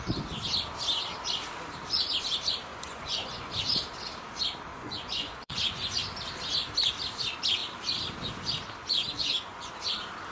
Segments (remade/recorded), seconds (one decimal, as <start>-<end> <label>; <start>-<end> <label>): 0.0-2.7 recorded; 2.7-3.6 remade; 3.6-4.7 recorded; 4.7-6.0 remade; 6.0-8.8 recorded; 8.8-9.7 remade; 9.7-10.3 recorded